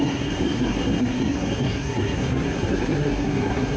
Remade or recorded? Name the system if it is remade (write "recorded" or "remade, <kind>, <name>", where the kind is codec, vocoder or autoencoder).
remade, codec, SNAC